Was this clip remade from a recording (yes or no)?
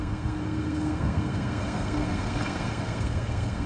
yes